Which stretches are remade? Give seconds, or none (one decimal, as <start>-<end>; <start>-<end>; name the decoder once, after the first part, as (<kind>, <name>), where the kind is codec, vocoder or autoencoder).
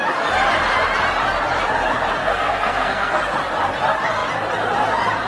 2.2-3.2 (codec, SNAC)